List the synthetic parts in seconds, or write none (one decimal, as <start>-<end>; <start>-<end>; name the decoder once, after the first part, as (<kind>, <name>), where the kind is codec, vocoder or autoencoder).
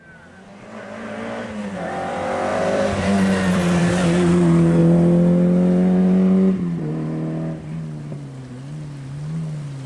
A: 2.5-3.8 (vocoder, BigVGAN v2)